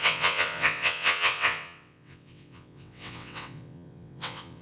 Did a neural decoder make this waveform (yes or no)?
yes